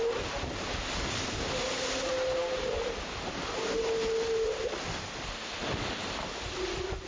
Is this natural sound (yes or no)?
yes